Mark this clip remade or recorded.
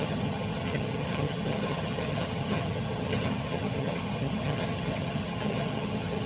remade